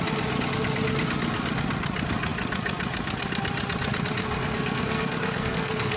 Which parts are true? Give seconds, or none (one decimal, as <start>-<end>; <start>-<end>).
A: 0.0-4.2